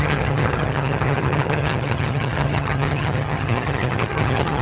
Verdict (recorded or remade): remade